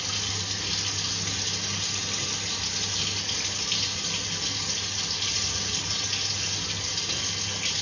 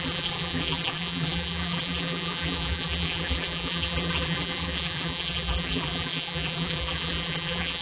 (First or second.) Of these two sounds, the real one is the first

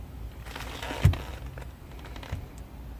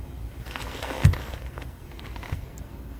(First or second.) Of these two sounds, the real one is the first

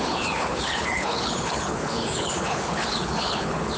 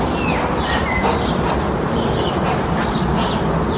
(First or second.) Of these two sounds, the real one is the second